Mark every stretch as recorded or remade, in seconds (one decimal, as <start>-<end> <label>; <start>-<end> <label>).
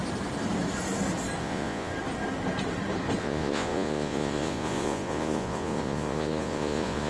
0.0-1.4 recorded; 1.4-1.9 remade; 1.9-3.2 recorded; 3.2-7.1 remade